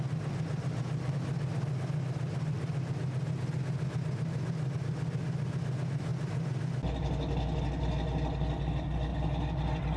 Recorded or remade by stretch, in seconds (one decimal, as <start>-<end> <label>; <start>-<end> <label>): 0.0-10.0 recorded